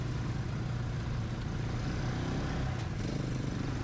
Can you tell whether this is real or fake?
real